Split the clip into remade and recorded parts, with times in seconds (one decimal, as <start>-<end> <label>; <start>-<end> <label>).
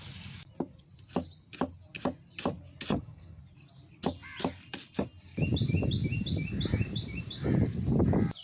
0.0-2.9 recorded; 2.9-3.4 remade; 3.4-8.4 recorded